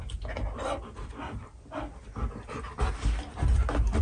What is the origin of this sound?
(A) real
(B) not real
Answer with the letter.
A